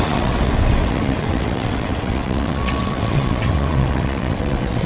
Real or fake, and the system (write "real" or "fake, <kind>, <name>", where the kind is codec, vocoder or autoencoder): fake, vocoder, WaveNeXt